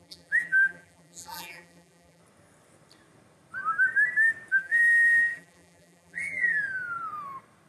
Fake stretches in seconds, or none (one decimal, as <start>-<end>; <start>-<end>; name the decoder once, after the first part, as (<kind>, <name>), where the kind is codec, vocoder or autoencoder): 0.0-2.2 (vocoder, BigVGAN v2); 4.5-6.6